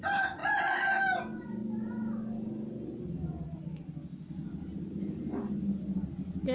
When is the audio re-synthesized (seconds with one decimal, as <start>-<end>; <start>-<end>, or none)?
none